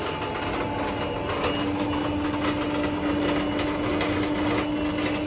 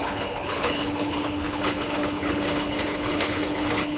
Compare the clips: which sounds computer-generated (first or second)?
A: second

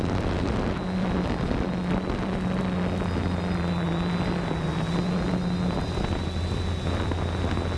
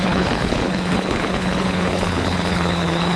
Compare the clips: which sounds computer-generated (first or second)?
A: second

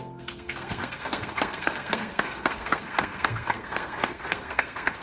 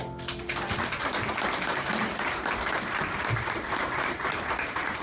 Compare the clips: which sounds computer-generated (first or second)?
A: first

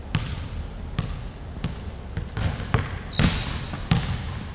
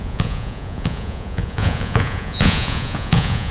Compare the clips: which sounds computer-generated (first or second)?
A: second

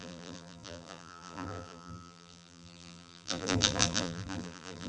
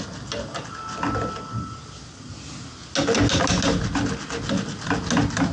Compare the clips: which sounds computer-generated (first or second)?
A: first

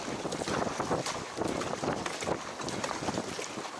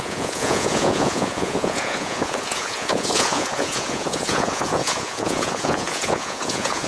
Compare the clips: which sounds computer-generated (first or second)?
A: second